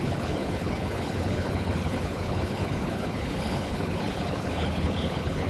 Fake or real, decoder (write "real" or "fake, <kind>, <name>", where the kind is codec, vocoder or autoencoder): fake, codec, HILCodec